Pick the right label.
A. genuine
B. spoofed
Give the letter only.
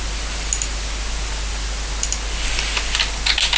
A